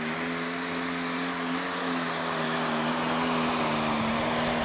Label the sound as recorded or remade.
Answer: recorded